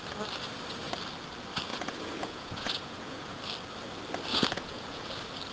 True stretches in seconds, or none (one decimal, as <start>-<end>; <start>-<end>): 0.0-1.7; 3.4-4.3; 5.1-5.5